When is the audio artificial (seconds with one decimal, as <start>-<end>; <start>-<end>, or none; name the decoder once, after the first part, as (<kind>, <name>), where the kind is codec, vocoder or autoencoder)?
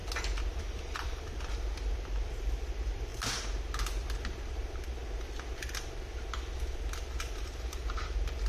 0.6-3.1 (vocoder, BigVGAN v2); 7.2-8.5